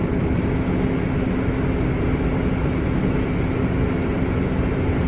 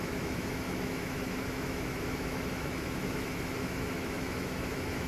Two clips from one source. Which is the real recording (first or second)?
first